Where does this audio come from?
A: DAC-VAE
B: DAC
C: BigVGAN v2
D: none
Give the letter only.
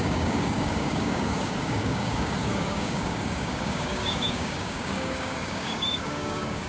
B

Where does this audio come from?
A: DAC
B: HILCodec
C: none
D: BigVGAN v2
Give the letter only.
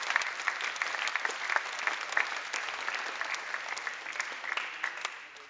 C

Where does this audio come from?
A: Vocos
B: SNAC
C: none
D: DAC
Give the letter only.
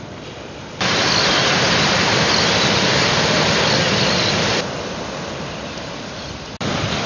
C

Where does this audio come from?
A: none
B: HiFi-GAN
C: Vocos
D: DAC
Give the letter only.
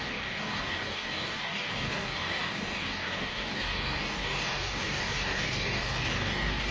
D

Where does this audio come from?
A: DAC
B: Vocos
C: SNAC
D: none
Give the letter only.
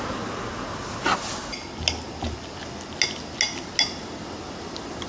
D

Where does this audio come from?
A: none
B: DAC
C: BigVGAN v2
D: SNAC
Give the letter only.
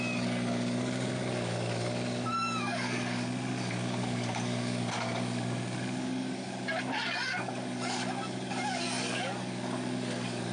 B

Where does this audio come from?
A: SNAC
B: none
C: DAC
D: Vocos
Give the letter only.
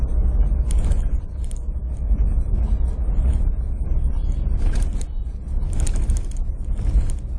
B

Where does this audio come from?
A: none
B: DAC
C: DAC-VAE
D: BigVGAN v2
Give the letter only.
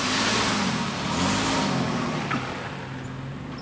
A